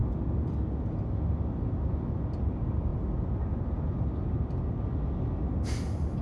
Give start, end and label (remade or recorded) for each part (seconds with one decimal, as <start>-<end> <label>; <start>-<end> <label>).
0.0-6.2 recorded